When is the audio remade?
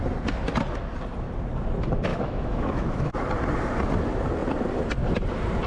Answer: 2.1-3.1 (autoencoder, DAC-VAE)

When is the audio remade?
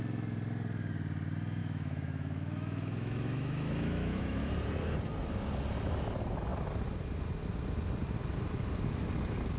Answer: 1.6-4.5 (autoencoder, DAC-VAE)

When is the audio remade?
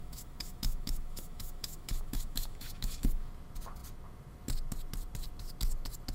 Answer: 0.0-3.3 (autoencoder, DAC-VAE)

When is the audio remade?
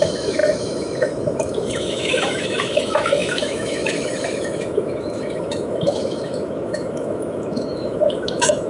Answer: 0.0-8.7 (autoencoder, DAC-VAE)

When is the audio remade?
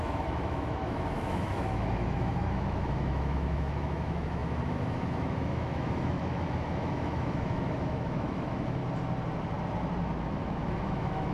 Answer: 0.0-8.8 (autoencoder, DAC-VAE); 10.2-11.3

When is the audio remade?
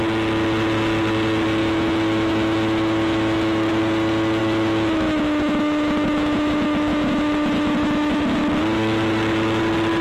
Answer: 1.6-3.8 (autoencoder, DAC-VAE); 4.4-8.2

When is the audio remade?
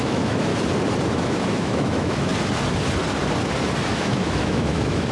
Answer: 0.0-0.5 (autoencoder, DAC-VAE); 1.1-2.3; 3.9-5.1